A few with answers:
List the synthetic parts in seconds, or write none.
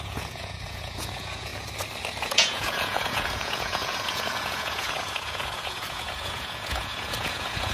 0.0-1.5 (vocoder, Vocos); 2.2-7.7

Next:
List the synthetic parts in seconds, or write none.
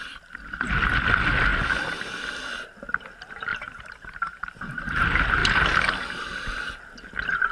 3.5-5.0 (vocoder, BigVGAN v2)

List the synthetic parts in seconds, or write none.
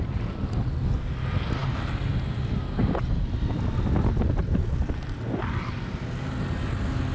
none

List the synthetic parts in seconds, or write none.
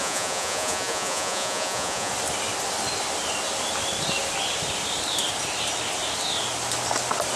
0.0-2.1 (vocoder, Vocos)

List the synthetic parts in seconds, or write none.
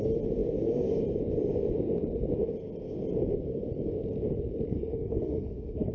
4.7-5.9 (autoencoder, DAC-VAE)